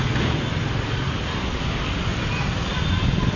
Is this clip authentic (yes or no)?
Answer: yes